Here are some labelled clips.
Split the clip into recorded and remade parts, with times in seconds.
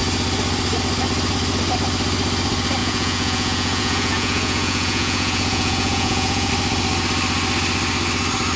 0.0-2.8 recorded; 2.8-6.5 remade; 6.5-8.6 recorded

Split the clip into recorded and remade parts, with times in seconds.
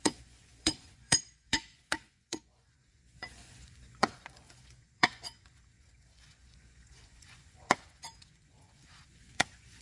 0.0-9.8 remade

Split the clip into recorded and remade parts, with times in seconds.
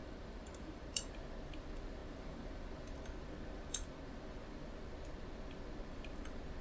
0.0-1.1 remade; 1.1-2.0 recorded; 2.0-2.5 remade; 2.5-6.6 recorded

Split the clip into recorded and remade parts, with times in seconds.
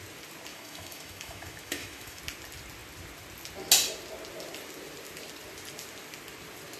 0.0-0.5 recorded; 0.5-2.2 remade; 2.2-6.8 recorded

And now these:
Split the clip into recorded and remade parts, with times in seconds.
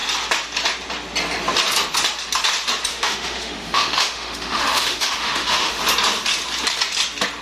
0.0-2.9 recorded; 2.9-5.8 remade; 5.8-7.4 recorded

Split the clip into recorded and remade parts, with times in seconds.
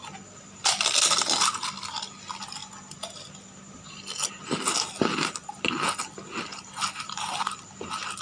0.0-8.2 recorded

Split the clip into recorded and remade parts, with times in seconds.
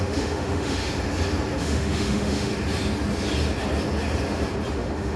0.0-0.9 remade; 0.9-1.6 recorded; 1.6-2.5 remade; 2.5-4.7 recorded; 4.7-5.2 remade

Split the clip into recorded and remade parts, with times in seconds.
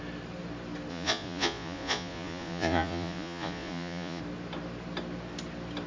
0.0-0.9 recorded; 0.9-4.2 remade; 4.2-5.9 recorded